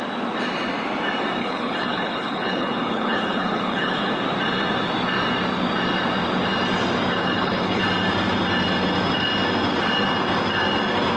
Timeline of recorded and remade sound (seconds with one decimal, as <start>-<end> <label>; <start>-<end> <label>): 0.0-1.4 recorded; 1.4-4.1 remade; 4.1-7.2 recorded; 7.2-7.8 remade; 7.8-11.2 recorded